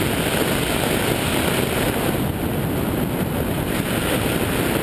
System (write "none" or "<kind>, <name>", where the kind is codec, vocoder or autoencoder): none